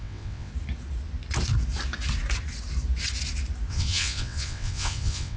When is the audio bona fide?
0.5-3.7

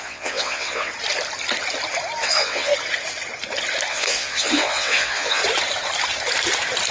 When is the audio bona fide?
0.9-2.2; 2.7-3.9; 5.4-6.9

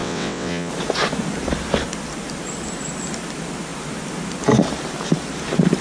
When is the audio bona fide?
0.7-5.8

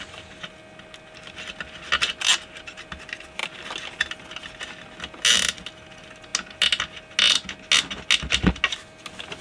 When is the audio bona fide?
0.0-9.4